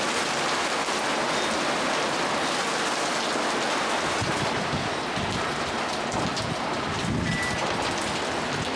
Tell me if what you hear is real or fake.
real